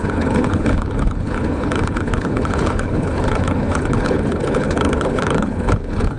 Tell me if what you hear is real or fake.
fake